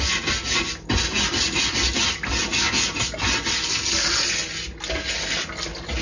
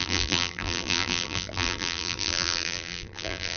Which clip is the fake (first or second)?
second